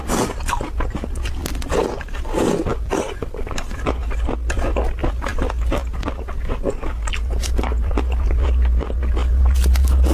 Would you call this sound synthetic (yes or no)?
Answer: no